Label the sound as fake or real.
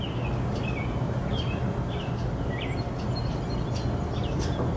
real